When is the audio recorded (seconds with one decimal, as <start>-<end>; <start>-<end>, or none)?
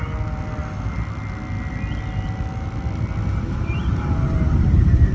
0.0-3.3